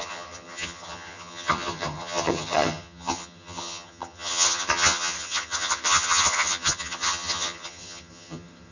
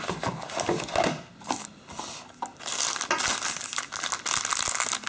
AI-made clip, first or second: first